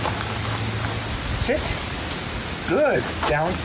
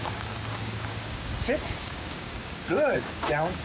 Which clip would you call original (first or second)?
first